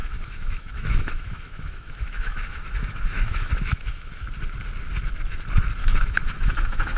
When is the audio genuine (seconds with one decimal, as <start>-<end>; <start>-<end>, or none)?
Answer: 4.2-5.8